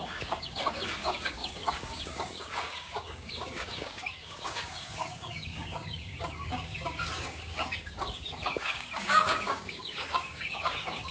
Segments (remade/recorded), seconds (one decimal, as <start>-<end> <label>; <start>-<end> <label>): 0.0-11.1 remade